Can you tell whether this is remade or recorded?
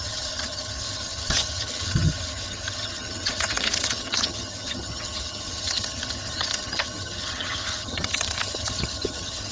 remade